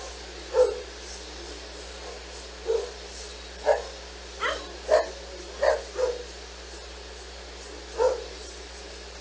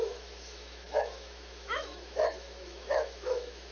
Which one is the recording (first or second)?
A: first